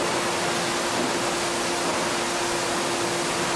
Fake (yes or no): no